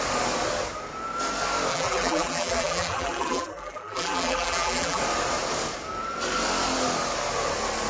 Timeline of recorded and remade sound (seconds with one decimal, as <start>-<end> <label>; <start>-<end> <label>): 0.0-1.7 recorded; 1.7-5.0 remade; 5.0-7.9 recorded